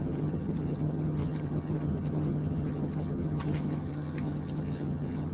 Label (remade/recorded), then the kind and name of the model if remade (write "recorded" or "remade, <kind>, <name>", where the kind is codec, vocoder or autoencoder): remade, vocoder, HiFi-GAN